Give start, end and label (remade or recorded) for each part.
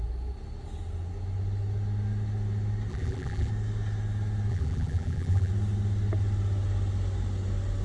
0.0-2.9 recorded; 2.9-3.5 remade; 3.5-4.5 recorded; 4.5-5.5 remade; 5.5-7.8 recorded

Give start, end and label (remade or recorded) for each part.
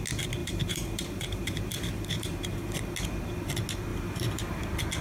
0.0-0.4 recorded; 0.4-2.8 remade; 2.8-3.9 recorded; 3.9-4.6 remade; 4.6-5.0 recorded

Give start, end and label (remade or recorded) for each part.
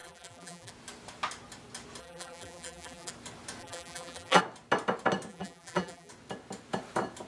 0.0-0.7 remade; 0.7-2.0 recorded; 2.0-3.1 remade; 3.1-3.6 recorded; 3.6-4.4 remade; 4.4-5.3 recorded; 5.3-6.1 remade; 6.1-7.3 recorded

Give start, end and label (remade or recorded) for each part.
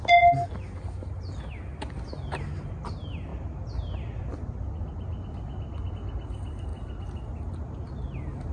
0.0-8.5 recorded